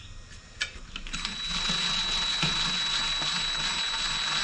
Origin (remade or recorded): recorded